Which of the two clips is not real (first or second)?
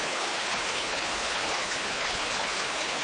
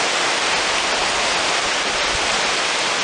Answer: first